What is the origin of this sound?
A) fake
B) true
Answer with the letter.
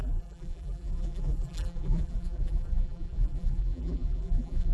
A